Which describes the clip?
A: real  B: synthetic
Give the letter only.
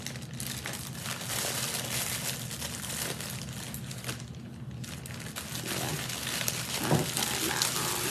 A